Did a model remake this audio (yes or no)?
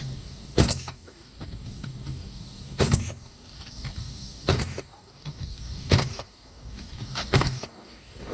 yes